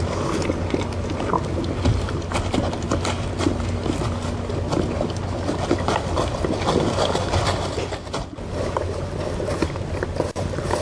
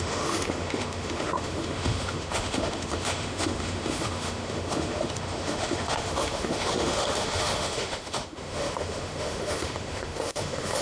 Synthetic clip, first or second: second